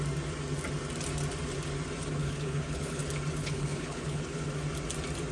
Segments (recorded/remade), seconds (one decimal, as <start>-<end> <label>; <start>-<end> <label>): 0.0-2.2 recorded; 2.2-3.0 remade; 3.0-3.4 recorded; 3.4-4.5 remade; 4.5-5.3 recorded